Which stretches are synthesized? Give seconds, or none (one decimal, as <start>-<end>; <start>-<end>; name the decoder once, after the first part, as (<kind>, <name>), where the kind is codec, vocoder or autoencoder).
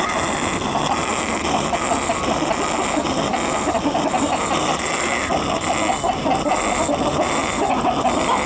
none